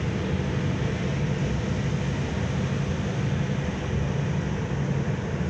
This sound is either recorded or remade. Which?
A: recorded